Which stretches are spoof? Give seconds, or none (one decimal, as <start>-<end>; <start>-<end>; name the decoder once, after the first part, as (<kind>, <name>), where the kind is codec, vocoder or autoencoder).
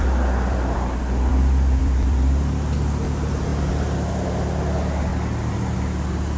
none